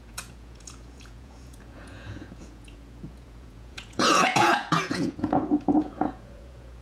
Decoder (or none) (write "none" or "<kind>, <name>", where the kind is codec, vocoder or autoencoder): vocoder, Vocos